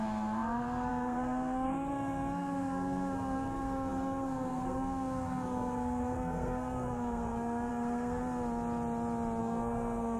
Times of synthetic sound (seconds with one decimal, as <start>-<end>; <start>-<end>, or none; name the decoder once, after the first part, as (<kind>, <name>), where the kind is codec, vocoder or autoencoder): 0.0-8.2 (codec, SNAC); 9.4-10.2